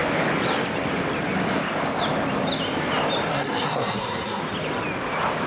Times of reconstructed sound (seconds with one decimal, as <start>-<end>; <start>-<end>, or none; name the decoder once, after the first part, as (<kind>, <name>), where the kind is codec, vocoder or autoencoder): 3.3-4.4 (codec, SNAC)